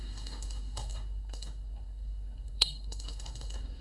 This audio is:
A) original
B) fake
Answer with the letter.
B